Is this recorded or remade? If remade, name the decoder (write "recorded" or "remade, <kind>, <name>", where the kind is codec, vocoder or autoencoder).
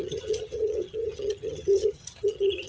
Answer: remade, vocoder, HiFi-GAN